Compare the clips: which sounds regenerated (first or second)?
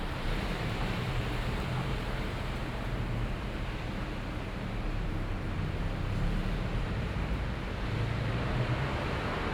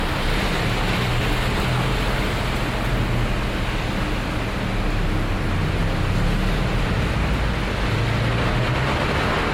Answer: first